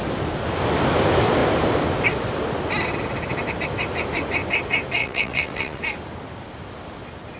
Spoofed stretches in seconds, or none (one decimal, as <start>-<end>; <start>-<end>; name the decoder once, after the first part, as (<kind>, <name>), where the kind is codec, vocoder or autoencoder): 5.0-5.8 (vocoder, WaveNeXt)